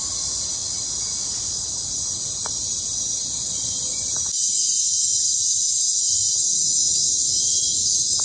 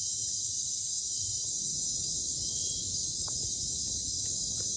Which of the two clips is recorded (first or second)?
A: first